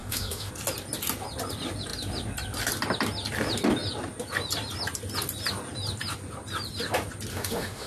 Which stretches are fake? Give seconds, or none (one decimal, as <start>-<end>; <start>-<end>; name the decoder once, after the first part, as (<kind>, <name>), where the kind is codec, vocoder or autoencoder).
0.0-0.5 (autoencoder, DAC-VAE); 7.3-7.9